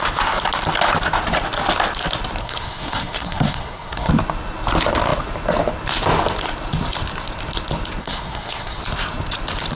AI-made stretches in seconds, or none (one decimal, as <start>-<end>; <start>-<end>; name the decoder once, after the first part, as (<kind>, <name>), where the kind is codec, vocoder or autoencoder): 2.4-4.1 (codec, SNAC); 8.0-8.8

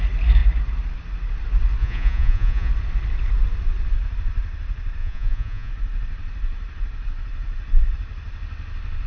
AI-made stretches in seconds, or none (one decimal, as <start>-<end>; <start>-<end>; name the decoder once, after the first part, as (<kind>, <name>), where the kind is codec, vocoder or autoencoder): 1.8-2.7 (vocoder, Vocos); 5.0-5.7

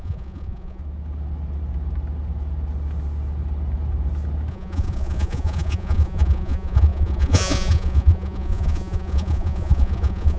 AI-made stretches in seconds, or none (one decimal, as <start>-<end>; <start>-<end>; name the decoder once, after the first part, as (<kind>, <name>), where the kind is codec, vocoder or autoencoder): 0.0-0.8 (vocoder, Vocos); 4.5-10.4

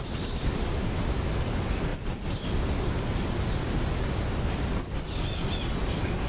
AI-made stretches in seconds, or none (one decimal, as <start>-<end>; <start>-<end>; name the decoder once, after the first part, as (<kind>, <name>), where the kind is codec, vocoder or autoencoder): none

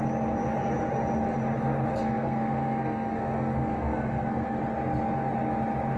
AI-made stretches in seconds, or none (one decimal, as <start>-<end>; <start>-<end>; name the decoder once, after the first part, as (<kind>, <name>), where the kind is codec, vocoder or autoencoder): 1.9-4.6 (codec, SNAC)